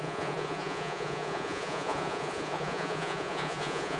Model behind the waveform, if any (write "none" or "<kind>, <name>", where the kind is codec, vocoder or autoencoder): vocoder, Vocos